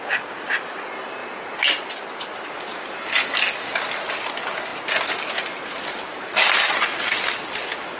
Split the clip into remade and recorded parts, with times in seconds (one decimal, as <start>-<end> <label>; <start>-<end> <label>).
0.0-8.0 recorded

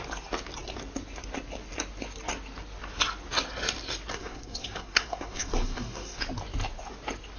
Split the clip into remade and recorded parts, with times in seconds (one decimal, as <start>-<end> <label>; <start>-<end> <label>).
0.0-4.1 recorded; 4.1-6.2 remade; 6.2-7.4 recorded